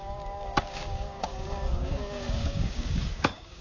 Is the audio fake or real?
fake